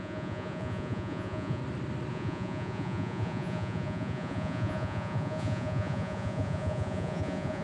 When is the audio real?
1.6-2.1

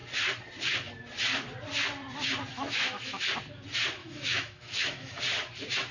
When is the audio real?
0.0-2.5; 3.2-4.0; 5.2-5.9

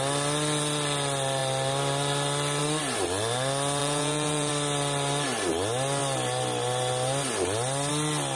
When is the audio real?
0.0-3.8; 4.5-8.4

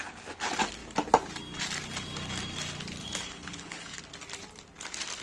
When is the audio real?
0.0-3.0; 4.0-5.2

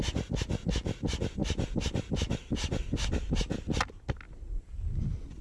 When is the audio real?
0.0-5.4

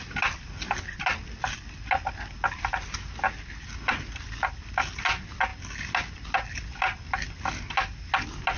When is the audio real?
0.0-8.6

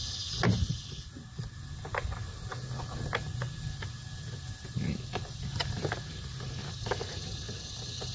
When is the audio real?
0.0-8.1